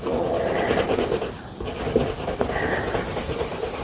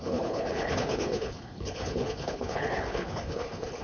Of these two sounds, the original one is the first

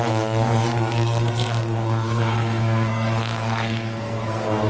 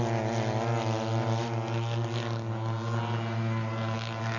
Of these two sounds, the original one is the second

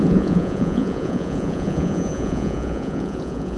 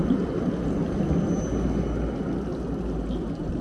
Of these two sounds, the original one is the second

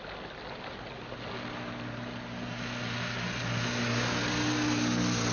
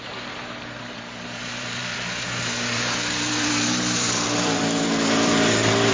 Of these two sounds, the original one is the first